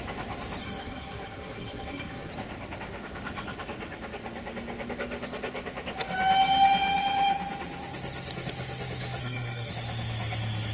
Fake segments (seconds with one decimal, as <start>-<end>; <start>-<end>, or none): 0.6-2.3; 9.2-9.7